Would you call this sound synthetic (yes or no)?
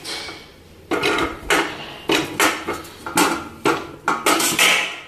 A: no